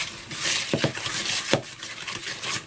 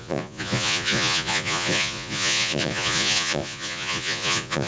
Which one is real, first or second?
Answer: first